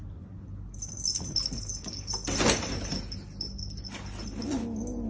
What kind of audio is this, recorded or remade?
recorded